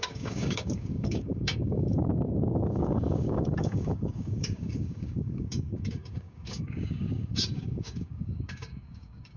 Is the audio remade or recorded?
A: remade